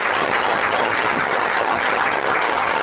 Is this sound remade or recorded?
remade